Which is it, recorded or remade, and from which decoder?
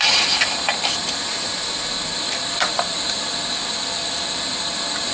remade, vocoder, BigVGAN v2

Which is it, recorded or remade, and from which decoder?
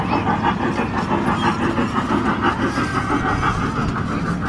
recorded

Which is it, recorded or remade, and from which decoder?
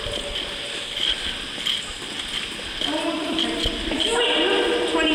recorded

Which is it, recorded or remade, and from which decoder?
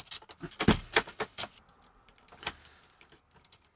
recorded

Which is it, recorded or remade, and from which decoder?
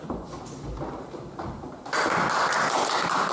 recorded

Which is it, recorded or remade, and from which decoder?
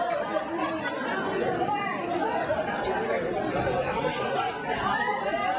remade, vocoder, BigVGAN v2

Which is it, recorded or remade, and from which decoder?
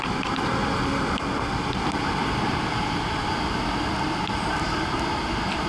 recorded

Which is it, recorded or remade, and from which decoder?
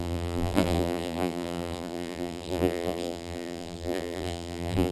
remade, vocoder, BigVGAN v2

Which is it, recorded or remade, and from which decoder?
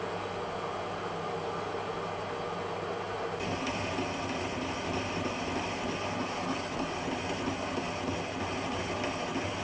recorded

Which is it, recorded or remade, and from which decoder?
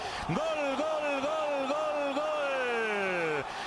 recorded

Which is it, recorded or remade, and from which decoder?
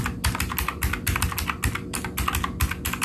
recorded